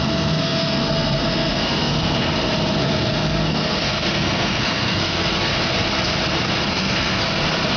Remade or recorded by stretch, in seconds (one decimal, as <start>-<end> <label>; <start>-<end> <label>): 0.0-2.3 remade; 2.3-2.8 recorded; 2.8-5.5 remade; 5.5-6.7 recorded; 6.7-7.2 remade; 7.2-7.8 recorded